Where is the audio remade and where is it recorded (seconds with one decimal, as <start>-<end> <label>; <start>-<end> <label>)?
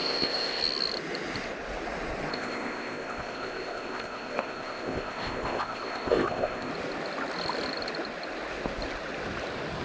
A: 0.0-0.6 remade; 0.6-2.3 recorded; 2.3-6.7 remade; 6.7-9.8 recorded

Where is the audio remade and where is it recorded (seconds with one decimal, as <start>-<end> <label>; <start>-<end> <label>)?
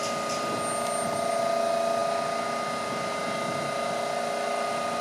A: 0.0-5.0 recorded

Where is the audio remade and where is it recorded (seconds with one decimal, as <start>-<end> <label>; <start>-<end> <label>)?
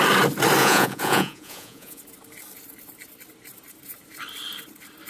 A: 0.0-0.6 recorded; 0.6-2.0 remade; 2.0-5.1 recorded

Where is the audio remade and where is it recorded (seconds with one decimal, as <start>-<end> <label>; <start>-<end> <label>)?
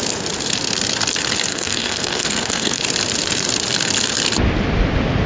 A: 0.0-1.5 recorded; 1.5-2.8 remade; 2.8-5.3 recorded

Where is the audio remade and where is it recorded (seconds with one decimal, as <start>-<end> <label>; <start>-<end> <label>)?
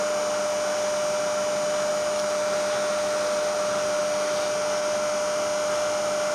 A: 0.0-6.3 recorded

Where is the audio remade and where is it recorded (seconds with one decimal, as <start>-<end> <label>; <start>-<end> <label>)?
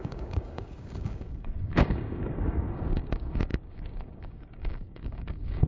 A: 0.0-5.7 remade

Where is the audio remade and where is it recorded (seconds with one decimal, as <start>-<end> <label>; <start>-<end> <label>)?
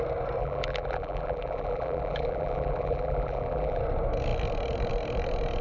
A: 0.0-0.4 recorded; 0.4-3.8 remade; 3.8-5.6 recorded